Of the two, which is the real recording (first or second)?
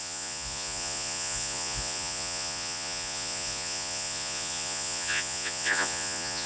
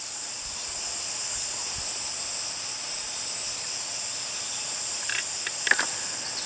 second